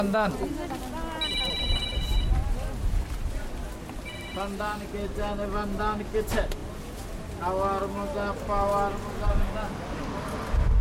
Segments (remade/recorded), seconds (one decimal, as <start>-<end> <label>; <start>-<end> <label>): 0.0-10.8 recorded